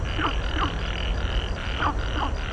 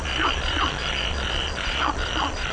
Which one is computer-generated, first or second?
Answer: second